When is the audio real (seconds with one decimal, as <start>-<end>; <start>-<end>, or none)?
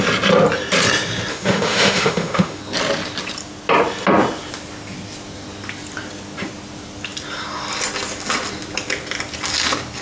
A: 0.0-1.3; 2.6-10.0